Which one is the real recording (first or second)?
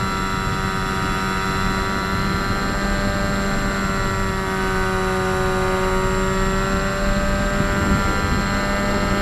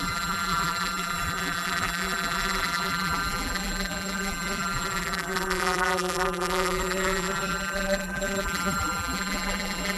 first